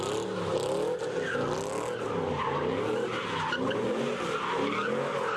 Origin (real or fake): real